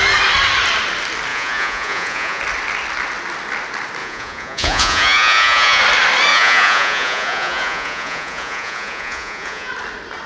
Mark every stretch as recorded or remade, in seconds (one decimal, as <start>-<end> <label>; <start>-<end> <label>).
0.0-1.3 recorded; 1.3-2.4 remade; 2.4-4.0 recorded; 4.0-5.8 remade; 5.8-6.3 recorded; 6.3-9.7 remade; 9.7-10.3 recorded